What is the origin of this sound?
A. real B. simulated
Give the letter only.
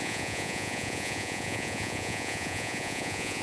B